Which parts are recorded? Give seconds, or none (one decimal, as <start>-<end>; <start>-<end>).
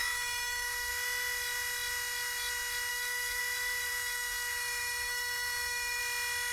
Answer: 0.9-2.9; 3.4-3.9; 6.0-6.5